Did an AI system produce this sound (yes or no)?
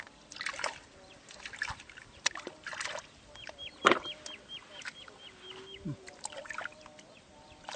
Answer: no